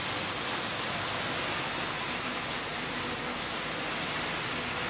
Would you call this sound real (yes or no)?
yes